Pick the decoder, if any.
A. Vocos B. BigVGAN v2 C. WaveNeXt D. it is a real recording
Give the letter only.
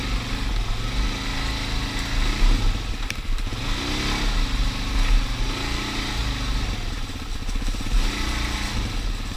D